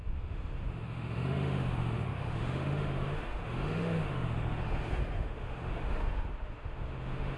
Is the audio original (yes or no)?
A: no